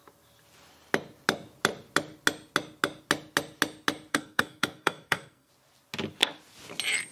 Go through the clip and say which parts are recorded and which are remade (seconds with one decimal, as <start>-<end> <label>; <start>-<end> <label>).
0.0-4.1 recorded; 4.1-5.5 remade; 5.5-7.1 recorded